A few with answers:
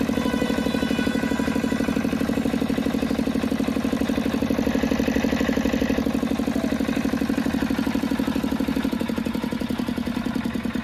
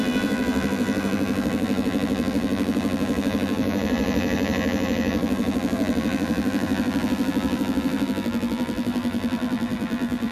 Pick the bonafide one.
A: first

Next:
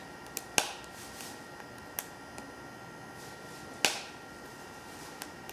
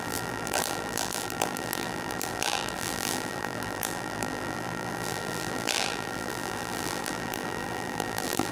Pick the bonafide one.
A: first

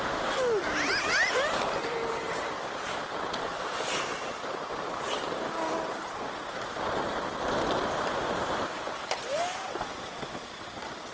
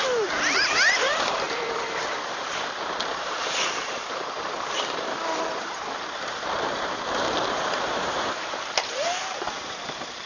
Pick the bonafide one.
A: first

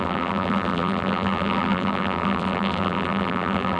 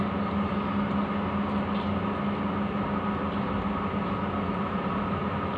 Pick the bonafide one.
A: second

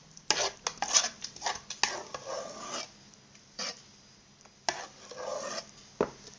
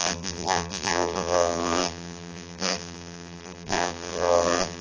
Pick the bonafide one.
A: first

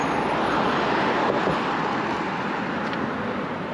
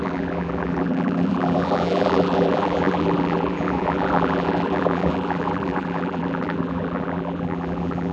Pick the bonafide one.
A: first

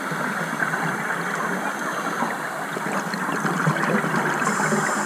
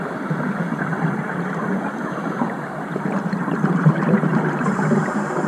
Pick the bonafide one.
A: first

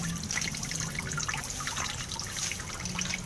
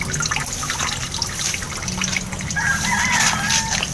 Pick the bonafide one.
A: second